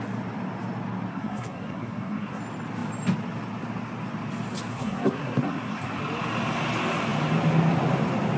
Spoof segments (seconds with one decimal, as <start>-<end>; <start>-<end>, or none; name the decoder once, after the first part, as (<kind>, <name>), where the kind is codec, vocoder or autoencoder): 1.1-2.4 (codec, SNAC); 4.7-6.0